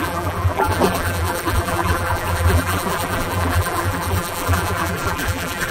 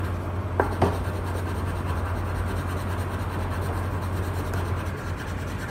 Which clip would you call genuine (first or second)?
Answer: second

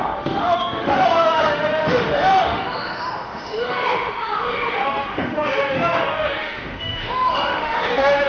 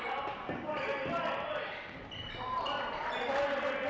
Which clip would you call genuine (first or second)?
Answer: second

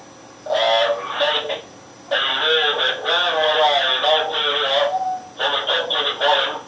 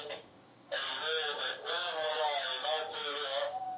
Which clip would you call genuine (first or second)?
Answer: first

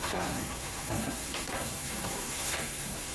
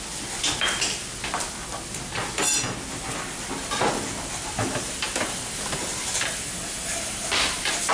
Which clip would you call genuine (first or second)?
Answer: second